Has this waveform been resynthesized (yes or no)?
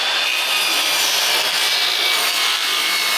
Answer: no